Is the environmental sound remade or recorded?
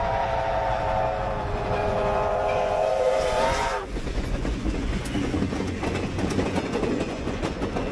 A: remade